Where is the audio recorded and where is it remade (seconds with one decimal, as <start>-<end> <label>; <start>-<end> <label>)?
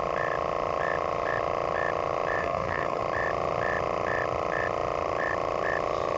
0.0-2.4 recorded; 2.4-3.0 remade; 3.0-6.2 recorded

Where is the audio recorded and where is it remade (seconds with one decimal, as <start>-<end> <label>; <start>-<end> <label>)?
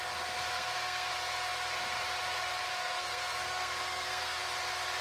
0.0-0.5 recorded; 0.5-1.1 remade; 1.1-2.7 recorded; 2.7-4.4 remade; 4.4-5.0 recorded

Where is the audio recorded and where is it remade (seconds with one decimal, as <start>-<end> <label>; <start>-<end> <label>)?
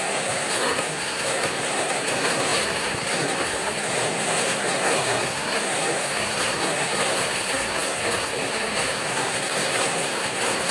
0.0-10.7 remade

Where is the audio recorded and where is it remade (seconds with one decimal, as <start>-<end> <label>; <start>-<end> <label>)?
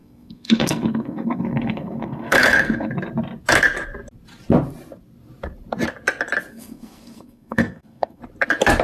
0.0-2.9 remade; 2.9-6.5 recorded; 6.5-8.2 remade; 8.2-8.8 recorded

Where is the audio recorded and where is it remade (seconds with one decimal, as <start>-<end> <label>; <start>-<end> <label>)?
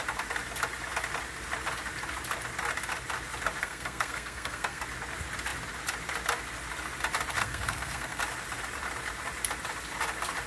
0.0-3.6 recorded; 3.6-4.8 remade; 4.8-7.4 recorded; 7.4-8.2 remade; 8.2-10.5 recorded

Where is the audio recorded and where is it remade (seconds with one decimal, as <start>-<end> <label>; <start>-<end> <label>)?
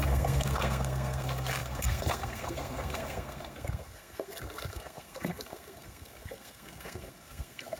0.0-7.8 remade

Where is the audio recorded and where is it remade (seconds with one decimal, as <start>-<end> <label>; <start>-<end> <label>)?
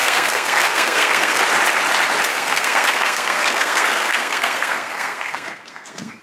0.0-1.4 remade; 1.4-2.3 recorded; 2.3-6.2 remade